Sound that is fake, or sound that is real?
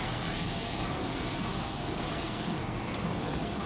fake